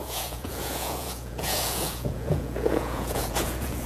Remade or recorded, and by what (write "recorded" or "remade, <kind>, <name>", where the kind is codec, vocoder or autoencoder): remade, vocoder, Vocos